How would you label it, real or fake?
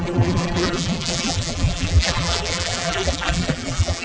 fake